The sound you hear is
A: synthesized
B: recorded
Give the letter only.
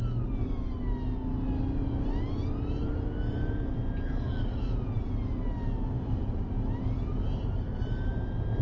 B